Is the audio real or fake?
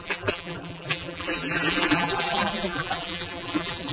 fake